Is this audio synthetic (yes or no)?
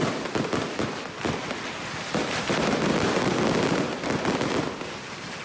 no